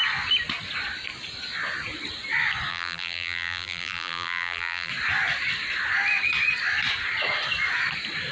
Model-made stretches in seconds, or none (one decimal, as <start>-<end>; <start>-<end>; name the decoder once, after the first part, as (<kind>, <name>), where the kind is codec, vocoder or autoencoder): 2.7-4.9 (vocoder, BigVGAN v2)